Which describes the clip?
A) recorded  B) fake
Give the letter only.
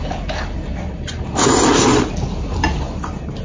A